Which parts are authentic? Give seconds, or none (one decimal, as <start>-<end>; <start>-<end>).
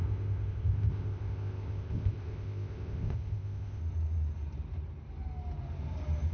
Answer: 3.8-6.3